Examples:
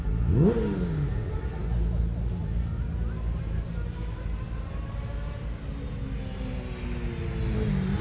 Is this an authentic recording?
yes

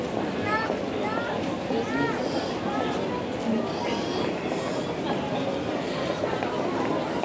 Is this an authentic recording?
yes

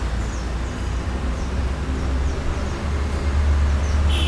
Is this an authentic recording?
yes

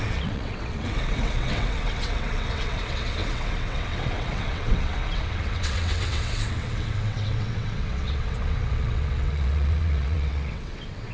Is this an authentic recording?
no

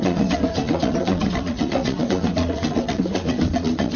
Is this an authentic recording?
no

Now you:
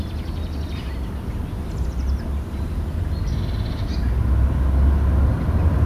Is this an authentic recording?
yes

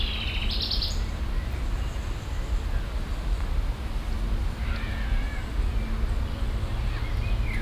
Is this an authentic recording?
yes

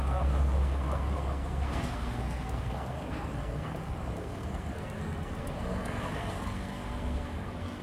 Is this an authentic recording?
no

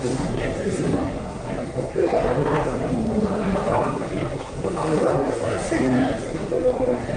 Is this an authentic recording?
no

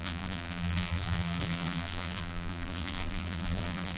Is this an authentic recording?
no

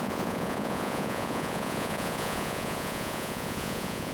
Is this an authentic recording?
no